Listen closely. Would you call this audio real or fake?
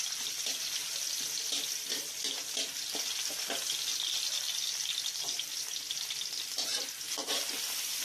real